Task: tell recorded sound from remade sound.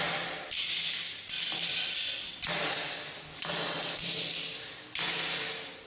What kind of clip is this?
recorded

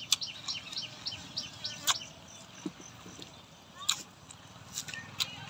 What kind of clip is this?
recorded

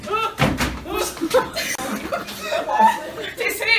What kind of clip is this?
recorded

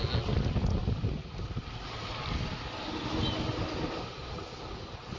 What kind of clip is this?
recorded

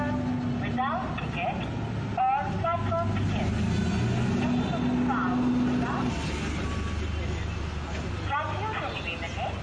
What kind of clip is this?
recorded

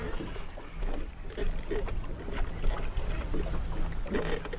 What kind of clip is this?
recorded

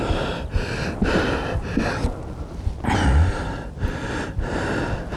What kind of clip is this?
recorded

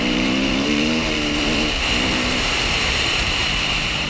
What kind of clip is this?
remade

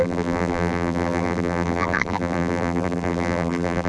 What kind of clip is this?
remade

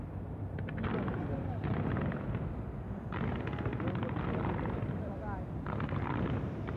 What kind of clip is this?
recorded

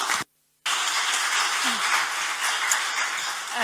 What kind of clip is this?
recorded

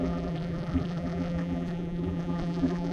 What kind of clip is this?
remade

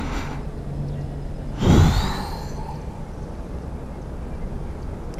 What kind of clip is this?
recorded